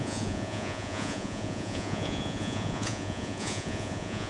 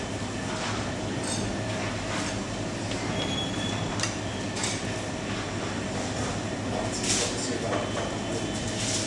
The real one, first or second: second